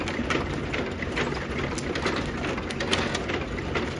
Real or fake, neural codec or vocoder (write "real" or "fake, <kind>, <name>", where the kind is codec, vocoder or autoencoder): real